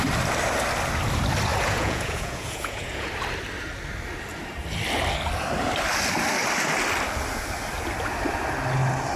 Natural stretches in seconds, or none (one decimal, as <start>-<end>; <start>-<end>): 0.0-1.5; 3.1-9.2